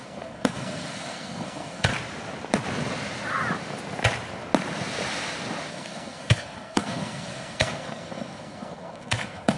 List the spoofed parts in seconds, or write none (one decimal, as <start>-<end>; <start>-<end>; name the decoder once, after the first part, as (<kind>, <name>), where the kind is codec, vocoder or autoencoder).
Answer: 0.0-1.9 (codec, SNAC); 5.7-9.6